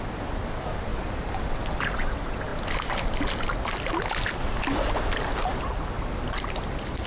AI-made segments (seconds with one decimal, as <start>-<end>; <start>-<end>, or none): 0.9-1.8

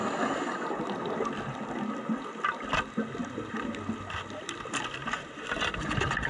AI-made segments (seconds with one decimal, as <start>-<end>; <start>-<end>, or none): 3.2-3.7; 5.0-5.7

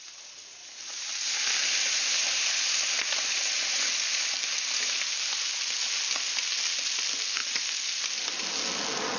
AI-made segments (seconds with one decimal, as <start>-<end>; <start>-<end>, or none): 0.6-3.8; 7.4-8.0

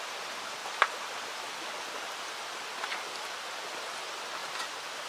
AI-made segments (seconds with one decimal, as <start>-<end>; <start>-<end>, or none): none

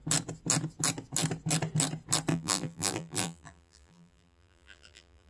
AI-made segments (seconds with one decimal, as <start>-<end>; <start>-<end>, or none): 2.3-5.3